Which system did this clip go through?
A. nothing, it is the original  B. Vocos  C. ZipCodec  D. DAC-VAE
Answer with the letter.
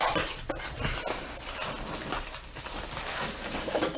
A